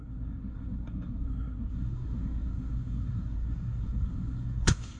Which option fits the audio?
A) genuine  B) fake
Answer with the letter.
B